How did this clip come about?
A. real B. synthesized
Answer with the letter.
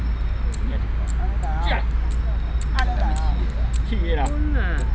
A